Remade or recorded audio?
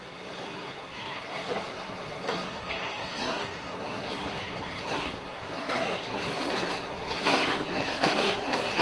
remade